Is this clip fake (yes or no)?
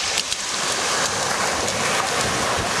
no